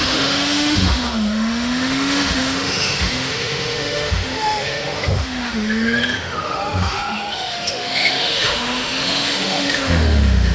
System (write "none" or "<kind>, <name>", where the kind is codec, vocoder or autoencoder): autoencoder, DAC-VAE